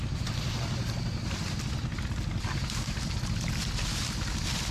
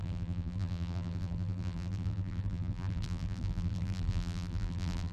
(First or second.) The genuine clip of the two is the first